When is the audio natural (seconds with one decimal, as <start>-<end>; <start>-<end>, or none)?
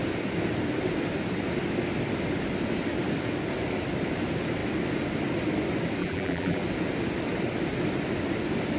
0.0-6.0; 6.6-8.8